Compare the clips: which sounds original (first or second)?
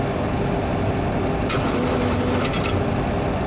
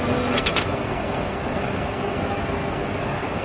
first